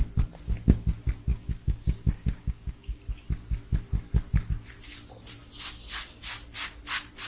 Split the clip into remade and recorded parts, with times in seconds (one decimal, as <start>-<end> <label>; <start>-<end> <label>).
0.0-1.3 recorded; 1.3-3.0 remade; 3.0-7.3 recorded